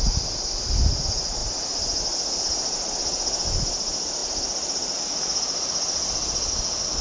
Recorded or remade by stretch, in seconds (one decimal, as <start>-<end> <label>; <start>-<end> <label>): 0.0-7.0 recorded